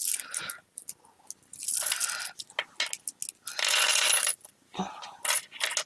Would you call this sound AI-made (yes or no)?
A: no